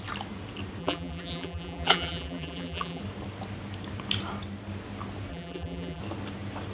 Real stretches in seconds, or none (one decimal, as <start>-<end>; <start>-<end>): 0.0-0.8; 3.0-5.3; 6.0-6.7